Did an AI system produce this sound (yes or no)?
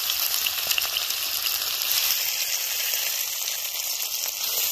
no